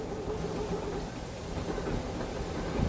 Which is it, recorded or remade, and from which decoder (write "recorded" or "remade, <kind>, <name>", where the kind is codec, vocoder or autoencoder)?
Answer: recorded